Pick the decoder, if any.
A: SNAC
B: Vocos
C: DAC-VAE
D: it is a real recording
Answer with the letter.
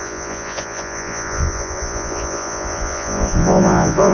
B